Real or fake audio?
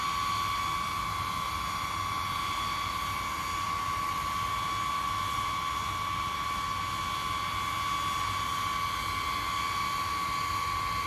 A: real